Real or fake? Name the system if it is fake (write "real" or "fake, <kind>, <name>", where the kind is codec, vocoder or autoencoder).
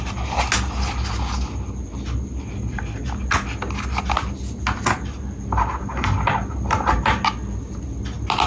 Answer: real